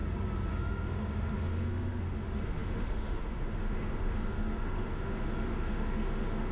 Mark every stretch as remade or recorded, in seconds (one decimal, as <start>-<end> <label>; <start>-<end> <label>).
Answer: 0.0-0.5 recorded; 0.5-6.5 remade

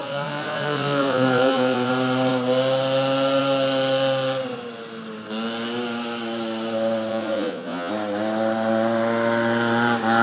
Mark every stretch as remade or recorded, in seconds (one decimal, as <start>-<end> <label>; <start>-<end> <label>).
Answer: 0.0-1.9 remade; 1.9-7.1 recorded; 7.1-7.9 remade; 7.9-10.2 recorded

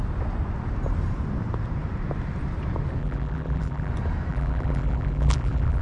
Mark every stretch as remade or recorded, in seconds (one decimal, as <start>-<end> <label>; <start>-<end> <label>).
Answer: 0.0-3.0 recorded; 3.0-3.9 remade; 3.9-4.3 recorded; 4.3-5.8 remade

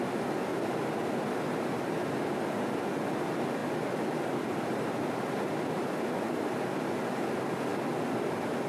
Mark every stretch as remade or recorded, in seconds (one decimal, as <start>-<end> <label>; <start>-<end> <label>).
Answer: 0.0-8.7 recorded

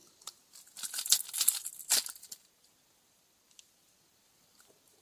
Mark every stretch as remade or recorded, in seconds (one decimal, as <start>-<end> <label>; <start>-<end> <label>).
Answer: 0.0-5.0 recorded

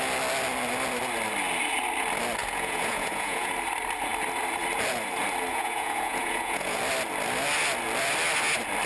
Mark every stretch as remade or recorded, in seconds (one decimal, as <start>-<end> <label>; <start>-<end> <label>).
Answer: 0.0-2.4 recorded; 2.4-3.5 remade; 3.5-5.5 recorded; 5.5-6.8 remade; 6.8-8.9 recorded

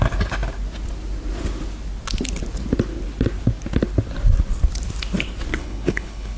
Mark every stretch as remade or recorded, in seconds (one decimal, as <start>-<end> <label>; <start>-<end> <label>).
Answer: 0.0-5.6 recorded; 5.6-6.4 remade

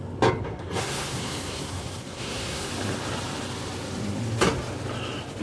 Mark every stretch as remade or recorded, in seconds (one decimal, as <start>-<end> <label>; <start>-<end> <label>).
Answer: 0.0-0.4 recorded; 0.4-2.7 remade; 2.7-5.4 recorded